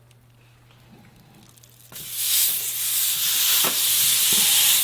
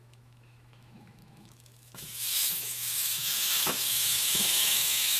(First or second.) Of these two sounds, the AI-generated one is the second